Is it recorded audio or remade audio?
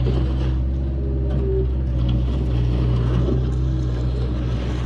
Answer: recorded